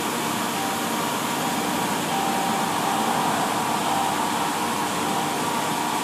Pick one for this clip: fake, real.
real